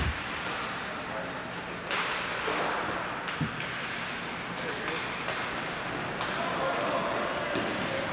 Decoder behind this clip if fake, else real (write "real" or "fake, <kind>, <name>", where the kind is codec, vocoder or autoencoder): real